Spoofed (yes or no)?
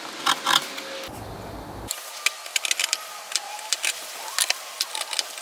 no